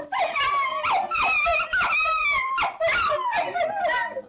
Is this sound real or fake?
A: real